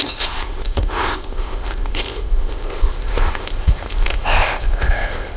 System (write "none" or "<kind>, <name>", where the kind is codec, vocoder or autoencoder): codec, ZipCodec